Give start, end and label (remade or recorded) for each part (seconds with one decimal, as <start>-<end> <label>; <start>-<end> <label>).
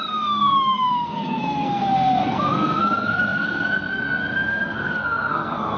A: 0.0-5.8 remade